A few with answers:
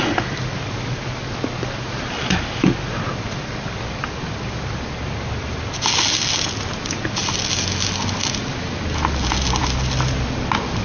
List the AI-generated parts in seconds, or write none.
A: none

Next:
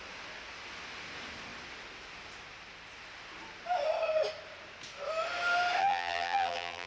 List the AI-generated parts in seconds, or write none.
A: 5.8-6.9